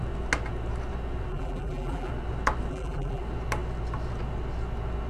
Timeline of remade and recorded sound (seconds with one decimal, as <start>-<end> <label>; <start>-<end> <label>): 0.0-1.3 recorded; 1.3-2.1 remade; 2.1-2.7 recorded; 2.7-3.2 remade; 3.2-5.1 recorded